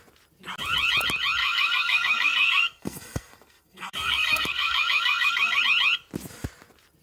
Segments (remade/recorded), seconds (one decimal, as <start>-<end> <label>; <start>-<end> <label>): 0.0-1.4 recorded; 1.4-5.6 remade; 5.6-7.0 recorded